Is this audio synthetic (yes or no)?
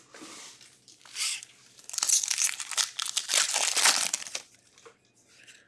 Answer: no